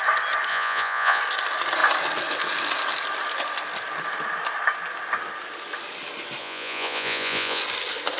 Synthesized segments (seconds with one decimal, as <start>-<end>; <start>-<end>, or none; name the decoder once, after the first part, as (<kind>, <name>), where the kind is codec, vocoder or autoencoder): 0.5-1.2 (vocoder, Vocos); 6.4-7.6

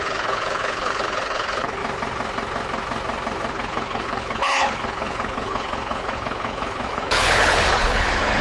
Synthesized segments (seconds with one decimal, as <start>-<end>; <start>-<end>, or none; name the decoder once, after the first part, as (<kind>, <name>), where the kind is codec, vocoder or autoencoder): 0.0-1.8 (codec, HILCodec); 3.5-8.4

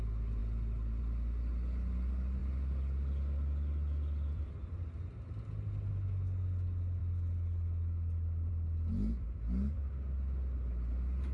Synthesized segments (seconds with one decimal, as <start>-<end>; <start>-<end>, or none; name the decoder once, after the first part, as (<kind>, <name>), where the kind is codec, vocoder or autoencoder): none

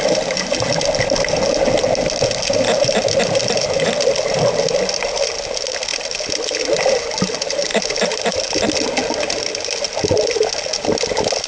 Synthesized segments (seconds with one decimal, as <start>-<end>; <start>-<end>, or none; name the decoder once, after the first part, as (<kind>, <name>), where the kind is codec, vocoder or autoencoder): none

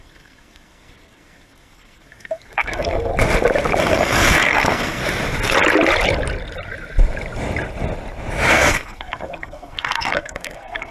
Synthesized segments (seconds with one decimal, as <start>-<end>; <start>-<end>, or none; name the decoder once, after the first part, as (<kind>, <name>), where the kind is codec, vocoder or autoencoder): 0.0-3.1 (codec, SNAC); 3.8-5.0; 8.5-10.9

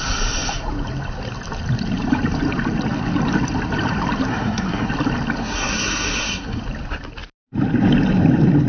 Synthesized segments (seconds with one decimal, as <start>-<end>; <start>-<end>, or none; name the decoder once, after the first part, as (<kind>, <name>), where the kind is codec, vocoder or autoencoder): 4.3-4.9 (codec, SNAC); 5.4-6.6